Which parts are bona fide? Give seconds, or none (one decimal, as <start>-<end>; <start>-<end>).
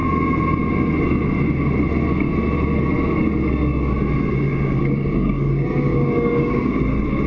0.0-4.3; 6.8-7.3